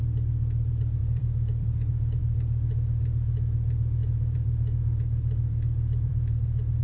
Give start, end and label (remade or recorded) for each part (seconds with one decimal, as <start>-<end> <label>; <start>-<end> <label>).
0.0-1.0 recorded; 1.0-2.2 remade; 2.2-4.0 recorded; 4.0-6.8 remade